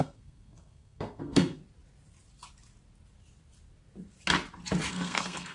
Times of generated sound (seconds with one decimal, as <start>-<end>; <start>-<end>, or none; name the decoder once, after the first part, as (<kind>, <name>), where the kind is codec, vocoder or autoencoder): 0.0-1.6 (codec, SNAC); 4.9-5.5